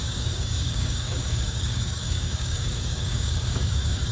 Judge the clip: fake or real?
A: fake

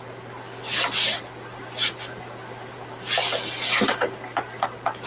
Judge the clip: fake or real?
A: real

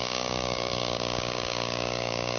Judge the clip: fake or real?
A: fake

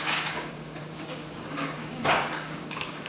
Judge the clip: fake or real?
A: fake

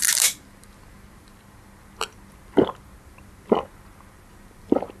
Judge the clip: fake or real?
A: real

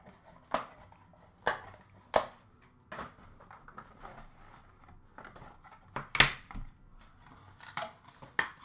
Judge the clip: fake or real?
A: real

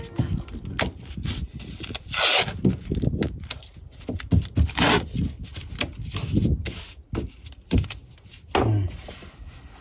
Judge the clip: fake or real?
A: real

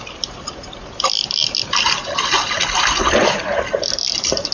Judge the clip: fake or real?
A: real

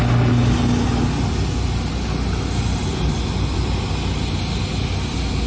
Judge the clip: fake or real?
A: real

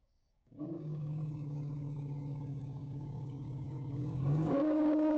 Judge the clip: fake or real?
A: fake